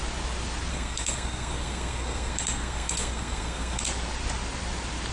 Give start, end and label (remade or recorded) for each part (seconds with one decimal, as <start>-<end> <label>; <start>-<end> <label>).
0.0-0.7 recorded; 0.7-3.8 remade; 3.8-5.1 recorded